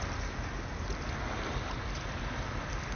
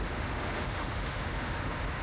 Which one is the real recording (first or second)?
first